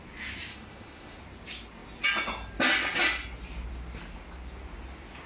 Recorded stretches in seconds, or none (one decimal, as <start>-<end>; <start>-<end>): 0.0-0.5; 1.2-5.3